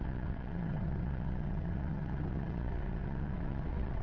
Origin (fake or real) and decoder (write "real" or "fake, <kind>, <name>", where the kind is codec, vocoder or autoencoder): fake, vocoder, WaveNeXt